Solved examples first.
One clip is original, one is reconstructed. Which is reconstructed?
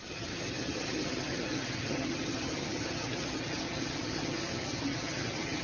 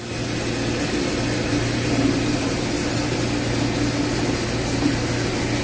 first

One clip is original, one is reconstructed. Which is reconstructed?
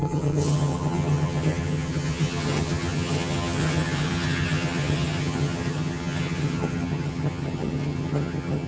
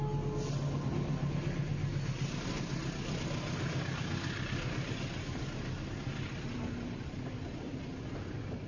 first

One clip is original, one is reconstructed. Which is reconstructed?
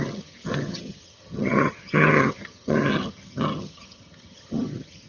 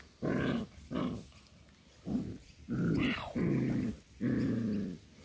first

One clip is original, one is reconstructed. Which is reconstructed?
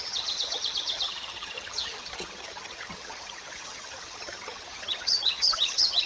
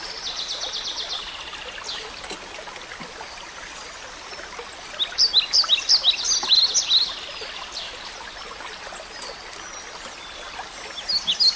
first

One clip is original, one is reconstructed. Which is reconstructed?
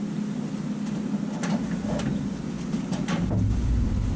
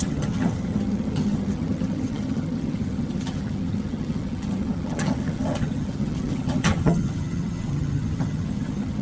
second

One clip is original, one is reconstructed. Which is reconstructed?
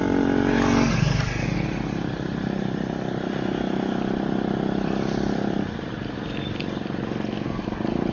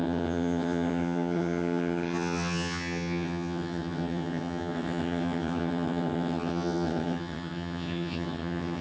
second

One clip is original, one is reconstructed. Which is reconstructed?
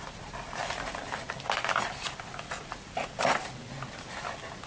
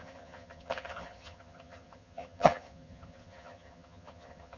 second